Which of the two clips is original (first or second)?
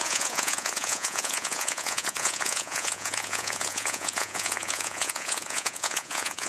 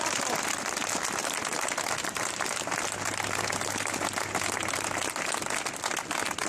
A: second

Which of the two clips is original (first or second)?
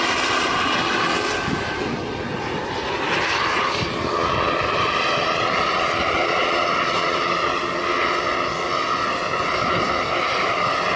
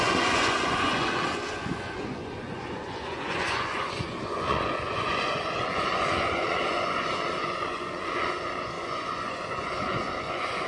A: first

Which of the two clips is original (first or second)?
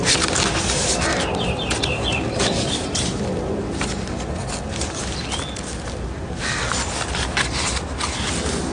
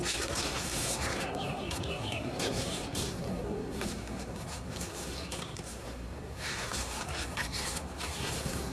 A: first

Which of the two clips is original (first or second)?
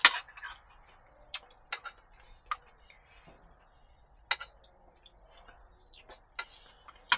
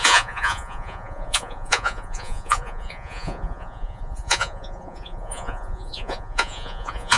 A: first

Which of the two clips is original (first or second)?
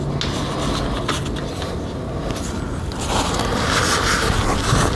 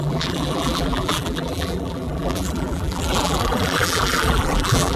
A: first